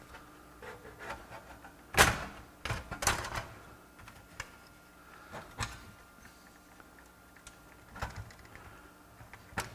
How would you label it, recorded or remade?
recorded